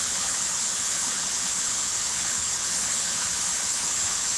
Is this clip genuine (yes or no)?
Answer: no